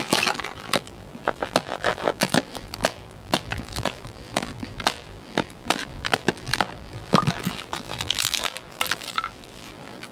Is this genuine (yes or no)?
no